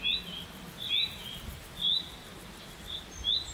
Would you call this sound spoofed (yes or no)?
no